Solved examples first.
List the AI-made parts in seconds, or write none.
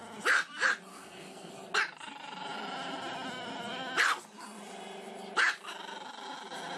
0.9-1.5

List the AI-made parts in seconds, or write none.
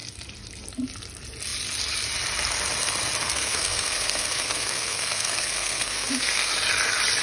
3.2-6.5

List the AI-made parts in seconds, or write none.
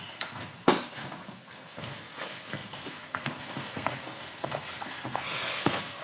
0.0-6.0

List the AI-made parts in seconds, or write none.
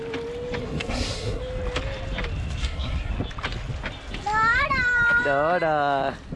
0.6-1.4; 2.6-3.1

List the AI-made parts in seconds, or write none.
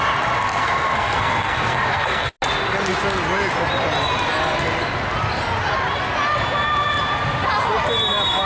0.4-2.3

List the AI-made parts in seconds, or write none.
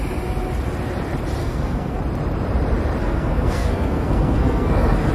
1.4-2.0; 3.0-5.1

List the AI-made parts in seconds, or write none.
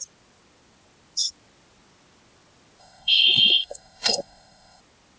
2.8-4.8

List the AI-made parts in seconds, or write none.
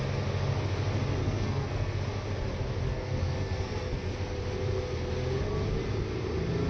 1.2-2.0; 2.9-4.1